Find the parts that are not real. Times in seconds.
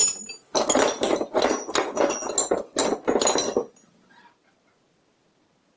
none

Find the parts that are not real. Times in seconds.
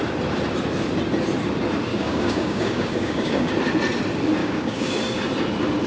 1.9-3.5 (codec, DAC); 4.4-4.9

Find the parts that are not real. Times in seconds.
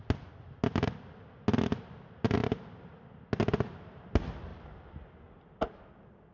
none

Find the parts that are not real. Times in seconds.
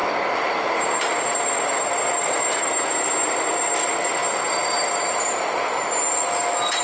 none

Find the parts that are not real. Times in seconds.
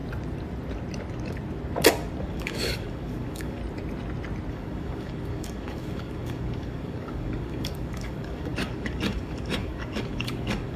2.2-3.6 (codec, DAC); 4.5-10.8